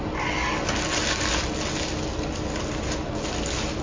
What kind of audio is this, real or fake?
real